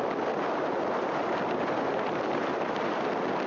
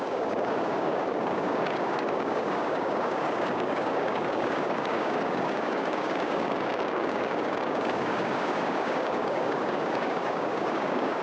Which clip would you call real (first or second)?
first